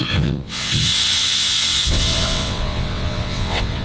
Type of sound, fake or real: fake